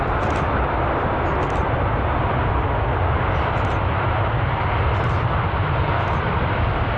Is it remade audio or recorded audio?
recorded